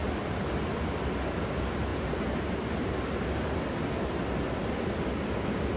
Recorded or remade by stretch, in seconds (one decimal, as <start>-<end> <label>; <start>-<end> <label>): 0.0-5.8 recorded